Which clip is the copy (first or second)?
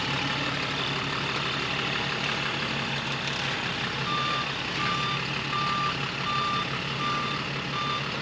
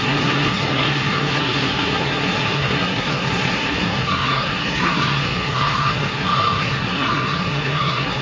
second